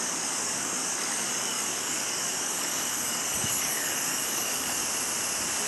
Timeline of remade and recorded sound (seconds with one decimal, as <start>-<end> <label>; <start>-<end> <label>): 0.0-4.8 remade; 4.8-5.7 recorded